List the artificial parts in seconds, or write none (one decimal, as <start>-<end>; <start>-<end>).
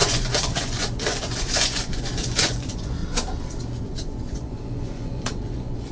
0.0-3.0; 3.8-5.9